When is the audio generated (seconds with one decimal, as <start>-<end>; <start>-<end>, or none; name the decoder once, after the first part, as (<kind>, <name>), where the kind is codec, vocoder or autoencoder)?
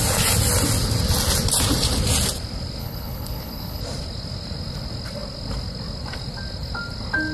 2.8-3.8 (codec, HILCodec)